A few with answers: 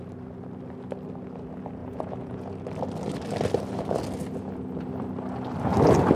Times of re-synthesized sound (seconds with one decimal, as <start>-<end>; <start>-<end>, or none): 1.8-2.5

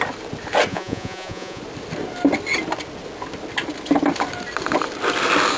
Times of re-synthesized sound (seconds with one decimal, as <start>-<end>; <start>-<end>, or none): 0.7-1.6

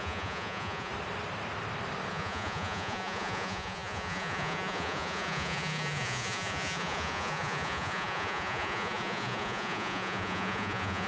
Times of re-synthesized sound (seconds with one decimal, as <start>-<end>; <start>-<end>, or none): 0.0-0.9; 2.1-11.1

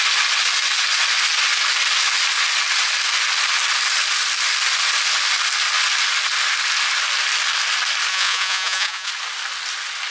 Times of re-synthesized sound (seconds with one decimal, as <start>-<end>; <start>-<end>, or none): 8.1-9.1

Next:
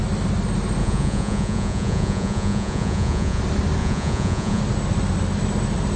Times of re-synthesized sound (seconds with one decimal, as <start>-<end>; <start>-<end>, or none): 0.8-3.4; 3.8-4.6

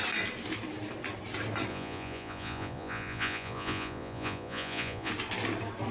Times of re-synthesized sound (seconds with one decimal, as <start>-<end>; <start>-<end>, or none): 1.7-5.1

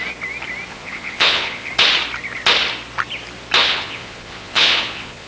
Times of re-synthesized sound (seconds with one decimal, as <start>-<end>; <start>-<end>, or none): 0.7-1.7; 3.6-5.3

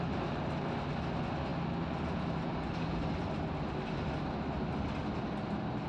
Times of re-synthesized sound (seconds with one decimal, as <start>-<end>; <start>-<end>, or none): none